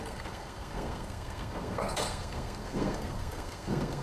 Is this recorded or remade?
remade